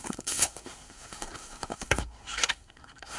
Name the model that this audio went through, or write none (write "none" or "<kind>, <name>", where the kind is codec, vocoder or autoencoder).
codec, SNAC